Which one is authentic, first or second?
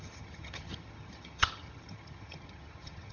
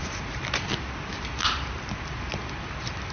second